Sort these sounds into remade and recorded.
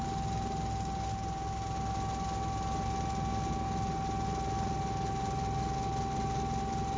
recorded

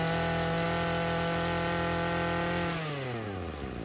recorded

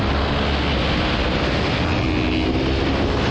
recorded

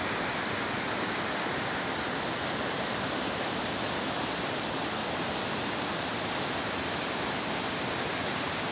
recorded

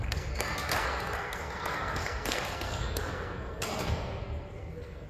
remade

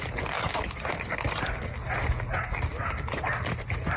recorded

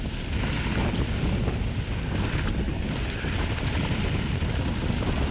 recorded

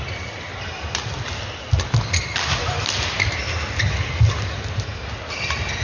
recorded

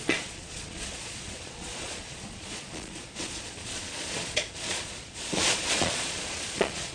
remade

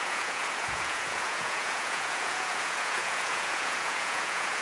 remade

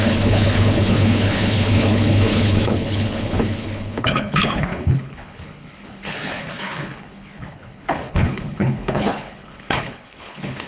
remade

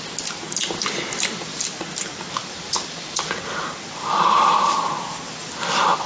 recorded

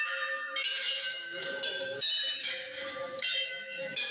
remade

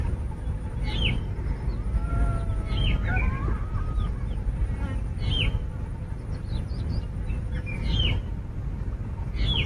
recorded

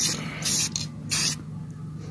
recorded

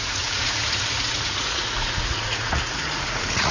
remade